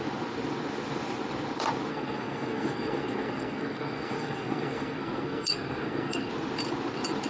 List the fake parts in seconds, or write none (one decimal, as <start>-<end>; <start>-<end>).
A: 1.9-6.3